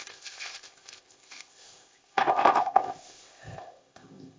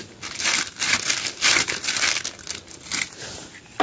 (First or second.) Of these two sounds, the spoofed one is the first